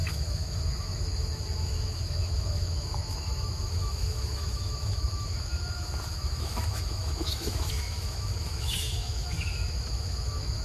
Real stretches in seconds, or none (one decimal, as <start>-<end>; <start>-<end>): none